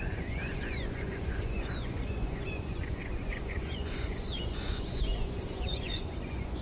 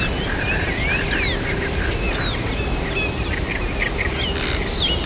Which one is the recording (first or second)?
second